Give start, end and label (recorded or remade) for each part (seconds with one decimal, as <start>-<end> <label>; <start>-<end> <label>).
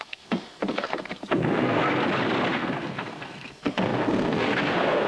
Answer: 0.0-1.8 remade; 1.8-2.5 recorded; 2.5-5.1 remade